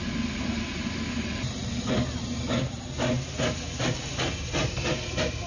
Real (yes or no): yes